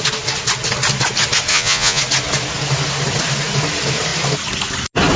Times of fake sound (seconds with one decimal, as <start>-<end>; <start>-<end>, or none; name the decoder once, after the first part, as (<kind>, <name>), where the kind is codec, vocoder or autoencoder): 1.5-2.0 (vocoder, Vocos)